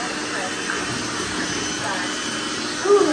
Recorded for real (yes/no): yes